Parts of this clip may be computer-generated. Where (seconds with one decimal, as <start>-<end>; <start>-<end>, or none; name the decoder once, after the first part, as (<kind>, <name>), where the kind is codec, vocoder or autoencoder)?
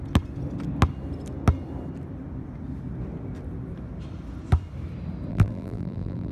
5.3-6.3 (vocoder, BigVGAN v2)